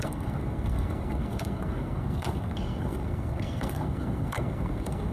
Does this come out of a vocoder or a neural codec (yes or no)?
yes